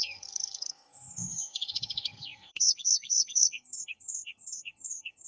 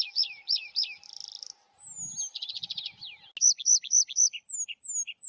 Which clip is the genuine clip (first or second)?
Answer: second